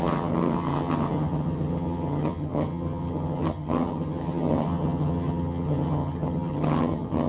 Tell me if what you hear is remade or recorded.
remade